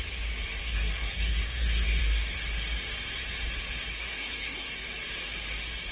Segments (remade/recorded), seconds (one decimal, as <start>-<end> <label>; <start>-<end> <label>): 0.0-0.6 recorded; 0.6-2.0 remade; 2.0-3.9 recorded; 3.9-4.7 remade; 4.7-5.9 recorded